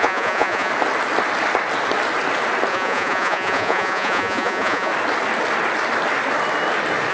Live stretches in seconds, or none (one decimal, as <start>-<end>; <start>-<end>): 0.7-2.7; 4.9-7.1